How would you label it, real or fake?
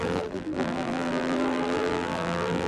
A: fake